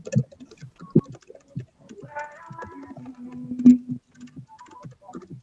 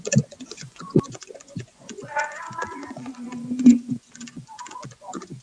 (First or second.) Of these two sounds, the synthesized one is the second